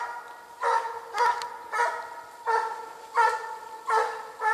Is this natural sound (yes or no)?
yes